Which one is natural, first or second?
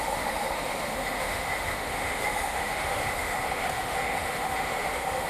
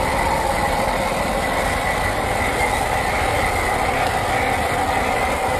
second